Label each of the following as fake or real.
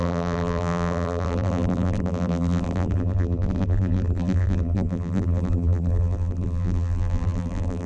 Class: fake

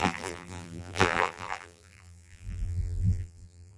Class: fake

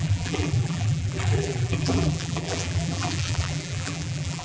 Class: fake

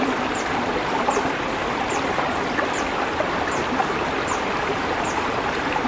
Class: fake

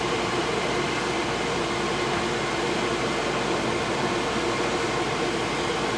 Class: real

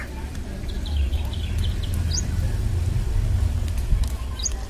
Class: real